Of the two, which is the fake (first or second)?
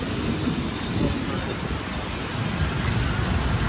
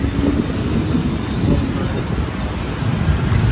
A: first